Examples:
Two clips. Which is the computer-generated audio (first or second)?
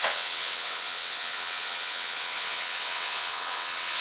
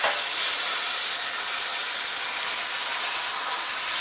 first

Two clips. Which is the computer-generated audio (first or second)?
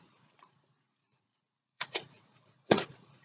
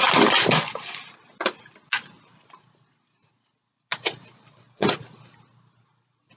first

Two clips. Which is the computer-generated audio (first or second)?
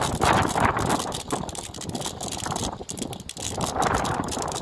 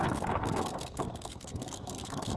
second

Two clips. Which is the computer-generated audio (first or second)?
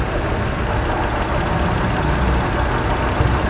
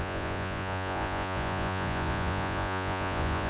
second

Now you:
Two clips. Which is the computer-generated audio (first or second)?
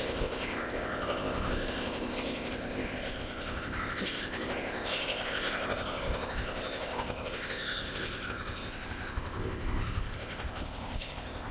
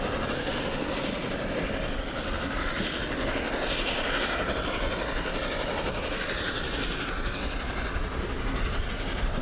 first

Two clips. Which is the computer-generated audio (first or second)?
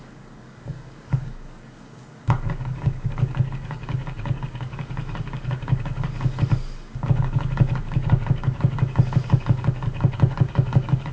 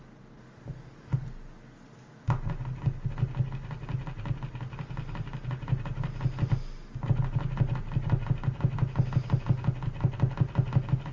first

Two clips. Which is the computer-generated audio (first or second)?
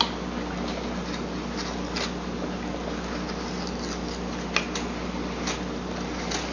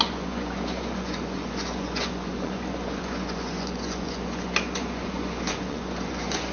second